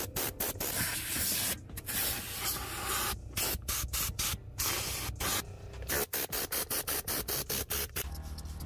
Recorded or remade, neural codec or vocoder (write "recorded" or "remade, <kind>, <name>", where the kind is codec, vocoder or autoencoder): recorded